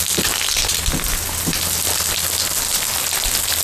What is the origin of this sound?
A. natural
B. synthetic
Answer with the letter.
A